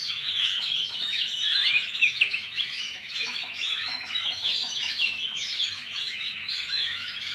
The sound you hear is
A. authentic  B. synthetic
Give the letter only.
B